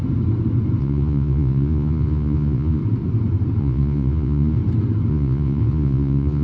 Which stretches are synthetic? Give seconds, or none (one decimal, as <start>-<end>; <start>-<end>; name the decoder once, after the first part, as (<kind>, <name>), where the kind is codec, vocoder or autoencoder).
0.8-2.8 (vocoder, Vocos); 3.6-4.6; 5.1-6.4